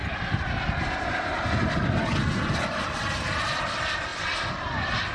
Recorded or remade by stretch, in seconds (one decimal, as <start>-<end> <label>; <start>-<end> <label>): 0.0-5.1 recorded